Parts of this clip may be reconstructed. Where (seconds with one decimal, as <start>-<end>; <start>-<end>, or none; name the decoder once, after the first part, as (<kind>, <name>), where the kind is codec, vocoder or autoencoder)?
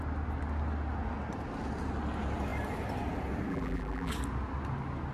3.5-4.1 (vocoder, BigVGAN v2)